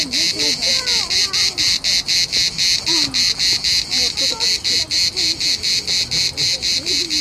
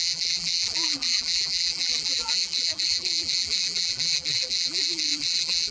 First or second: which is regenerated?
second